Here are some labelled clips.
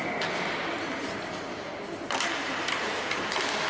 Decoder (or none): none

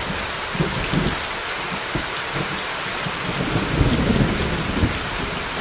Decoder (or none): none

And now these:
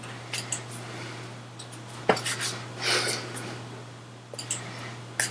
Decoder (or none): none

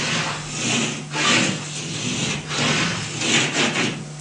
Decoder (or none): none